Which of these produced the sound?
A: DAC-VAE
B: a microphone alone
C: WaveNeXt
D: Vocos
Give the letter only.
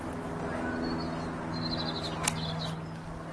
B